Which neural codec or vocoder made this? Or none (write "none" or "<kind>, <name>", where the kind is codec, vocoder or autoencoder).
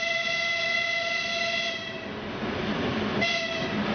none